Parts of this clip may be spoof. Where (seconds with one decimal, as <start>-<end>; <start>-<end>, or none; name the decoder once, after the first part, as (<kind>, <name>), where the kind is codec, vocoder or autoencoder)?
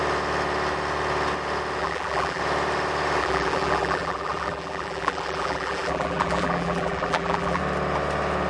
1.8-2.4 (vocoder, BigVGAN v2); 3.2-7.6